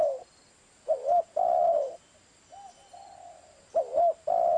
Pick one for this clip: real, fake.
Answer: real